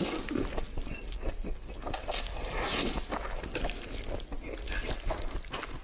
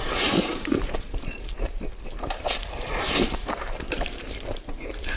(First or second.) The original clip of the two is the first